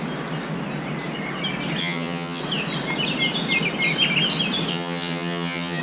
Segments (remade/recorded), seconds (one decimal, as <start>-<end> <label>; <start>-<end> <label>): 0.0-1.8 recorded; 1.8-2.4 remade; 2.4-4.7 recorded; 4.7-5.8 remade